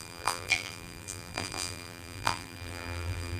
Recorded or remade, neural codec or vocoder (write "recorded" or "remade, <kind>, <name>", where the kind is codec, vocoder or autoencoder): remade, vocoder, BigVGAN v2